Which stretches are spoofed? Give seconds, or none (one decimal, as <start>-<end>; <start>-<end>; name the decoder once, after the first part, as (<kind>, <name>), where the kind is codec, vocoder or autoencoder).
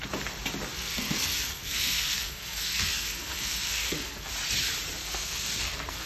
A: 0.7-4.3 (codec, SNAC); 5.0-6.1